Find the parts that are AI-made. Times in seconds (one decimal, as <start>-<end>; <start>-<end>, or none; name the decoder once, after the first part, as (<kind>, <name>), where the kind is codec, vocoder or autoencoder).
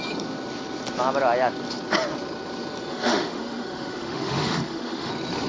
2.9-5.1 (autoencoder, DAC-VAE)